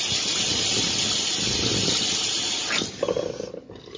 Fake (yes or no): yes